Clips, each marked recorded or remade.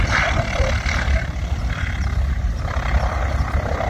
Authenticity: recorded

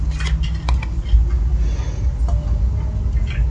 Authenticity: recorded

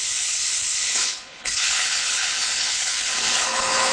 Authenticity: remade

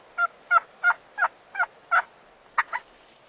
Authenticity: recorded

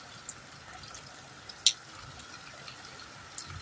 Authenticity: recorded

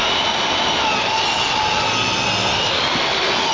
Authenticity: recorded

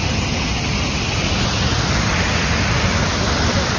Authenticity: recorded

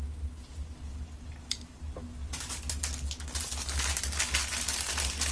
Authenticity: recorded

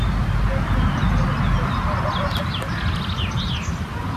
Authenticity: recorded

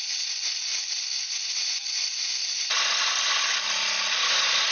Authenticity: recorded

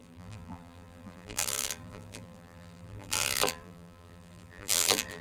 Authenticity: remade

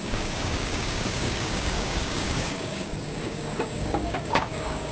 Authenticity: remade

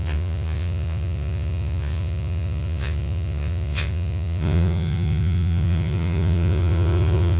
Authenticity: remade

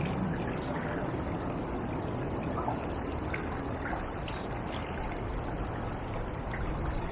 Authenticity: recorded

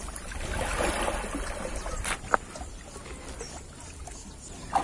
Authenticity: recorded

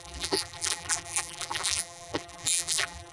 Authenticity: remade